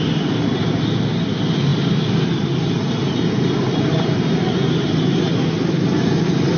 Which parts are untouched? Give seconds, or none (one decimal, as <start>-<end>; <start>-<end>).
0.0-6.6